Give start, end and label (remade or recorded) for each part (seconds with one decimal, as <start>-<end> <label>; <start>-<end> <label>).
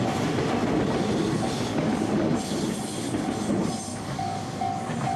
0.0-1.7 recorded; 1.7-2.4 remade; 2.4-3.9 recorded; 3.9-4.4 remade; 4.4-5.2 recorded